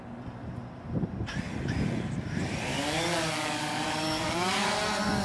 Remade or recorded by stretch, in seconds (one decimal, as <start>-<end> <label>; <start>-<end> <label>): 0.0-2.7 recorded; 2.7-4.8 remade; 4.8-5.2 recorded